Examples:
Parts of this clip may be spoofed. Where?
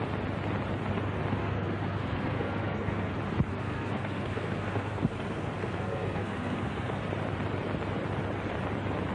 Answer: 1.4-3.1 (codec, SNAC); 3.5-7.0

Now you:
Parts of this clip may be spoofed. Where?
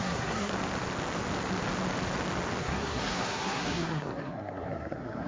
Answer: 0.0-0.5 (codec, SNAC); 2.6-5.3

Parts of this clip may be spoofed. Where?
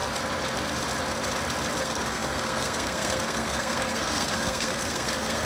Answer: 1.8-5.5 (codec, SNAC)